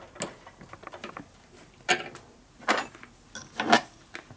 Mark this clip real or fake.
real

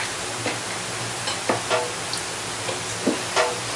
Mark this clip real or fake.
real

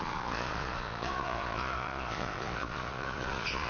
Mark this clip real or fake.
fake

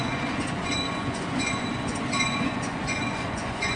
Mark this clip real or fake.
fake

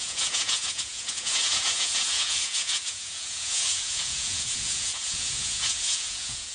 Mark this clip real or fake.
fake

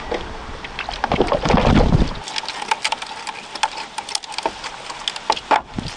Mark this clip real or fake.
real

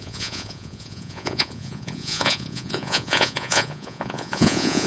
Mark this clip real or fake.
fake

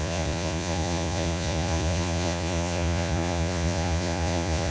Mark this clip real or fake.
fake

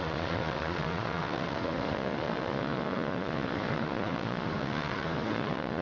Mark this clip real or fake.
fake